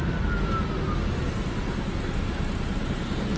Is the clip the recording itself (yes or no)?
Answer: yes